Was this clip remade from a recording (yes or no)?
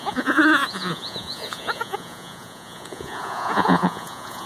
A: yes